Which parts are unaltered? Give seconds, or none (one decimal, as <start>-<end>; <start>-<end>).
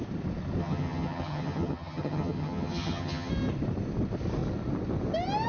0.0-0.6; 3.3-5.5